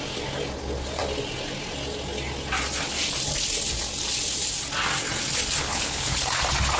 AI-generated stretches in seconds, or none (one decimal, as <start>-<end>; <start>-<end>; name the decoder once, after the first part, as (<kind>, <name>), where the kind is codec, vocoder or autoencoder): 5.6-6.2 (codec, HILCodec)